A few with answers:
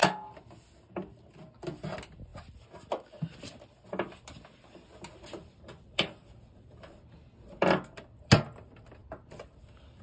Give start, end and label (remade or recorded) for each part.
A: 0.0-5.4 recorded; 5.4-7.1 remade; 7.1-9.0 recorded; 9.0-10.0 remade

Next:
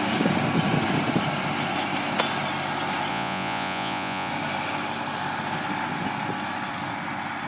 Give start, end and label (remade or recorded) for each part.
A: 0.0-3.1 recorded; 3.1-4.3 remade; 4.3-7.5 recorded

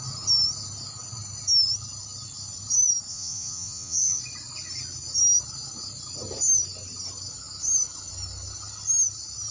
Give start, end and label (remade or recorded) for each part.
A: 0.0-3.1 recorded; 3.1-4.2 remade; 4.2-9.5 recorded

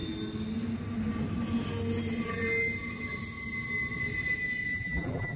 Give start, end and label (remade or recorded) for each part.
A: 0.0-4.7 recorded; 4.7-5.4 remade

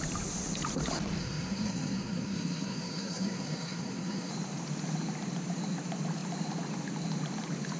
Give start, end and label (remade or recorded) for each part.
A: 0.0-1.2 recorded; 1.2-4.3 remade; 4.3-7.8 recorded